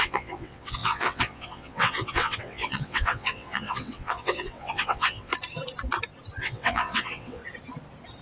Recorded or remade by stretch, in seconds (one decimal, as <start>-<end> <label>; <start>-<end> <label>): 0.0-5.3 remade; 5.3-6.4 recorded; 6.4-7.4 remade; 7.4-8.2 recorded